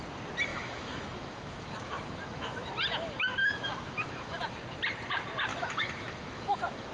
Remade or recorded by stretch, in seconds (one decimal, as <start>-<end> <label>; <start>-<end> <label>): 0.0-0.5 recorded; 0.5-2.7 remade; 2.7-3.4 recorded; 3.4-4.5 remade; 4.5-5.5 recorded; 5.5-6.9 remade